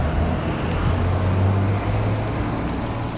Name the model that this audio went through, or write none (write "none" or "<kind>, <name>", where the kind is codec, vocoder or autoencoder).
none